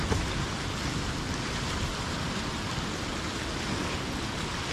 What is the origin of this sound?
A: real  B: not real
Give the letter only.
A